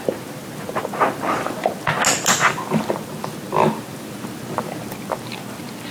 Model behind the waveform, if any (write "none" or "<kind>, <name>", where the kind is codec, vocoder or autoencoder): none